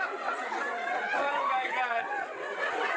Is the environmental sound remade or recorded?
remade